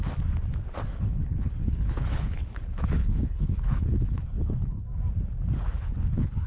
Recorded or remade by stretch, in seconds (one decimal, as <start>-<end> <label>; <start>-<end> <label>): 0.0-0.9 recorded; 0.9-4.8 remade; 4.8-5.7 recorded; 5.7-6.5 remade